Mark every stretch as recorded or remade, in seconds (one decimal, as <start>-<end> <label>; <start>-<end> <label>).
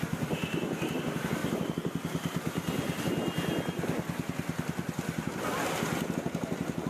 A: 0.0-6.9 recorded